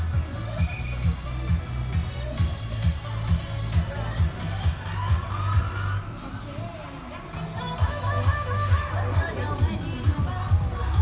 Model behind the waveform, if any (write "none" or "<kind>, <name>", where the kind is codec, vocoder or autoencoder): none